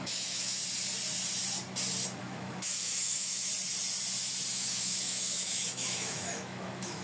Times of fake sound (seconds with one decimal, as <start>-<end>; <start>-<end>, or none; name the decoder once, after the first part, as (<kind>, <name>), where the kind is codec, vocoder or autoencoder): 0.0-0.6 (autoencoder, DAC-VAE); 2.2-3.5; 4.5-7.0